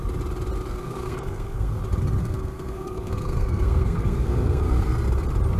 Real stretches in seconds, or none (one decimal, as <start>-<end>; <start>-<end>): 0.0-0.7; 1.8-2.2; 4.9-5.6